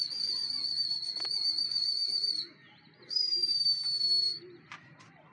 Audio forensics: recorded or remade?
recorded